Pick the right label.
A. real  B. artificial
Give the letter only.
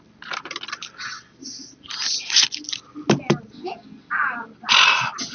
A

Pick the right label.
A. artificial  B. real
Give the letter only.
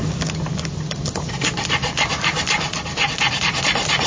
B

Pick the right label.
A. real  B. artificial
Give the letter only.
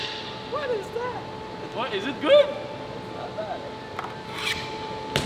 A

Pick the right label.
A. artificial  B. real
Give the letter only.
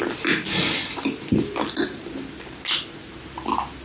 B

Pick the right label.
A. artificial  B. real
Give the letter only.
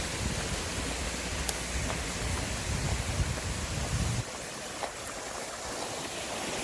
B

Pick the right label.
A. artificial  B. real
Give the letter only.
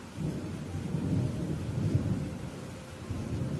B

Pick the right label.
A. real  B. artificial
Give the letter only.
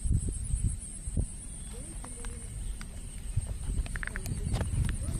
B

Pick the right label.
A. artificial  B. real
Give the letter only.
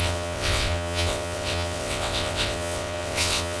A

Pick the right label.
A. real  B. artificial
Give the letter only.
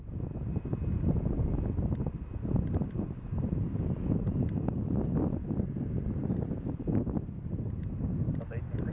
A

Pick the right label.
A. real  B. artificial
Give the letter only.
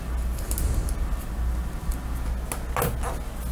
A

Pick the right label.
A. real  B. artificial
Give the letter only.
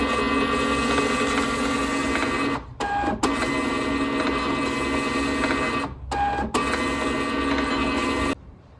A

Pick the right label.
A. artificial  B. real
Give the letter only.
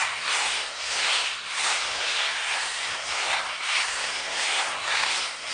A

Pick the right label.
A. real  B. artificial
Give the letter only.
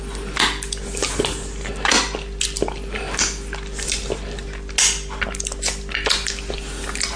A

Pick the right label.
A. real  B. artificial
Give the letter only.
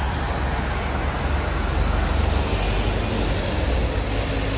A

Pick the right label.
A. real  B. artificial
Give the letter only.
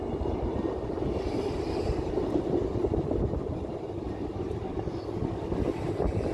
A